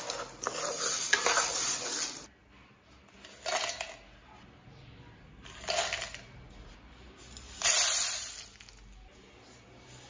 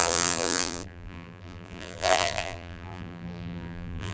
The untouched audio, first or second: first